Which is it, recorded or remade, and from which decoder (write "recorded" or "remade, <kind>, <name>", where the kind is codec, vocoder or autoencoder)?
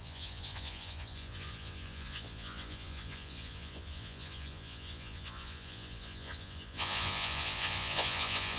remade, vocoder, Vocos